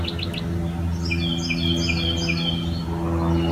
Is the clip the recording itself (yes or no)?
yes